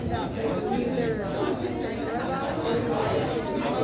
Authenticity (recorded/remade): recorded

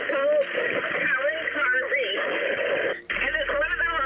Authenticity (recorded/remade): remade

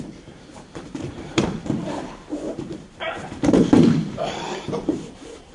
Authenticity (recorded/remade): remade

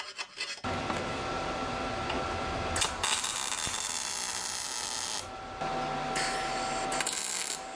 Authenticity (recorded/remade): recorded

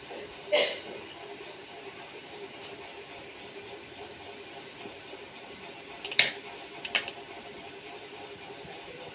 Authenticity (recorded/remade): remade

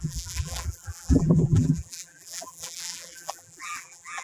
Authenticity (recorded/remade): remade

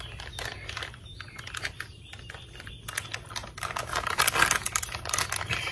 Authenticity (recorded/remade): recorded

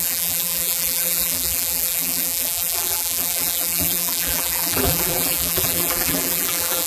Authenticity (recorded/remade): remade